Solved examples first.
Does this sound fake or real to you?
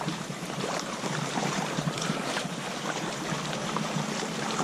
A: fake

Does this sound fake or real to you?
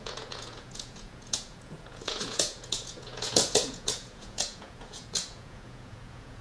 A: fake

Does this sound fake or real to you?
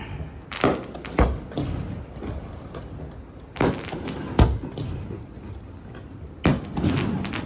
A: real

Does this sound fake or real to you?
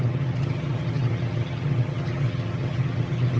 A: fake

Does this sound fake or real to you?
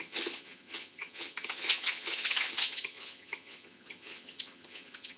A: fake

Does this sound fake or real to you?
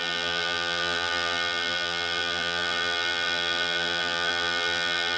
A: fake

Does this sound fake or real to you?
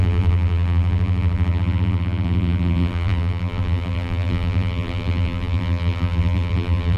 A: fake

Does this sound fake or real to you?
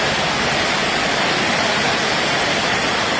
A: real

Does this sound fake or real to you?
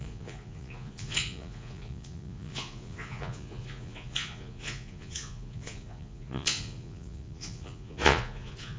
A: fake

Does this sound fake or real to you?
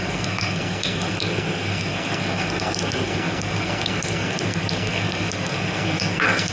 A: fake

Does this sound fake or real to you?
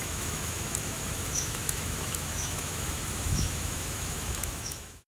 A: fake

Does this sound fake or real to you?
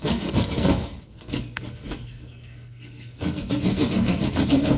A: fake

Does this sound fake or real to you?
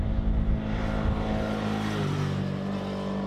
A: real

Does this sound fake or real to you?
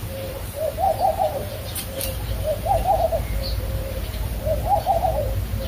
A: fake